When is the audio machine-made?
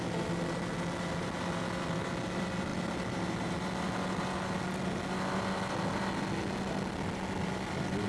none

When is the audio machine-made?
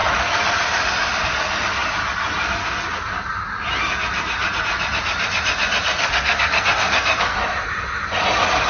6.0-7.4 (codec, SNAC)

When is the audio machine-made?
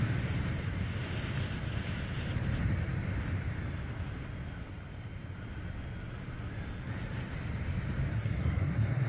8.1-9.1 (codec, SNAC)